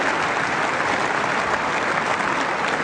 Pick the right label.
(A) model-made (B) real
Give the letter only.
B